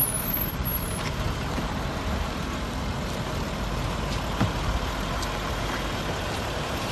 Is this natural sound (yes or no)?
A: no